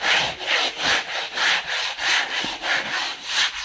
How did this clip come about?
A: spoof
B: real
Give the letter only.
B